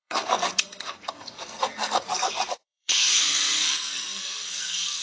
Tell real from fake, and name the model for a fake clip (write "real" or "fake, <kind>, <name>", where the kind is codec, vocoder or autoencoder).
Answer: fake, codec, SNAC